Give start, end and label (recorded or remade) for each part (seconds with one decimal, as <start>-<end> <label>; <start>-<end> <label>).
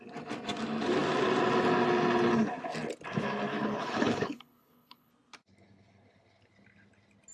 0.0-3.5 recorded; 3.5-5.1 remade; 5.1-7.3 recorded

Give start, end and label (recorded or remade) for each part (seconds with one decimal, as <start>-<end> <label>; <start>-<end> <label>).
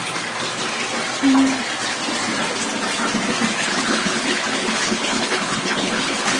0.0-3.5 recorded; 3.5-6.4 remade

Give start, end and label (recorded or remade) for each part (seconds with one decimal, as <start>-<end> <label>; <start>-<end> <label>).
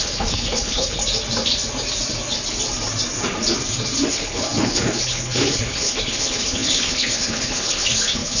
0.0-1.0 remade; 1.0-4.1 recorded; 4.1-8.4 remade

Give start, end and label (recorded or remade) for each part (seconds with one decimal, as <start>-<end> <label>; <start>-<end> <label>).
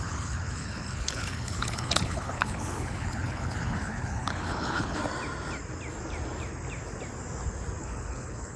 0.0-5.0 remade; 5.0-7.8 recorded; 7.8-8.6 remade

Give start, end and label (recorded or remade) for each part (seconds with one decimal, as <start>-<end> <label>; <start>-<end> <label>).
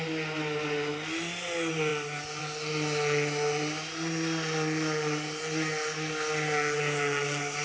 0.0-7.6 recorded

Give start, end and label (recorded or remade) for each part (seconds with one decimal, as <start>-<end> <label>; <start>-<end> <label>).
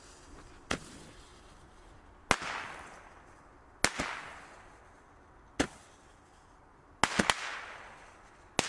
0.0-8.7 recorded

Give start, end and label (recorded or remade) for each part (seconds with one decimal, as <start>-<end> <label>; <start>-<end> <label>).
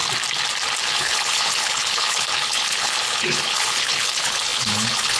0.0-0.8 recorded; 0.8-5.2 remade